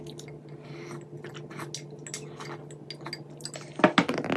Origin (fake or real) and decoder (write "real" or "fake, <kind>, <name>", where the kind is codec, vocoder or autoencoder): real